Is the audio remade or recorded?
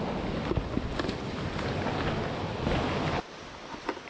recorded